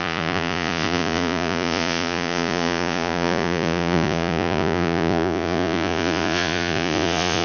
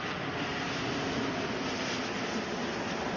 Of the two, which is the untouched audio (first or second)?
second